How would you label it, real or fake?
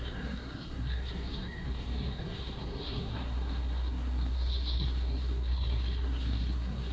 fake